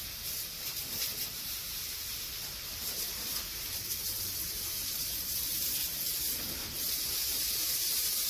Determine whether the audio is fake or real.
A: fake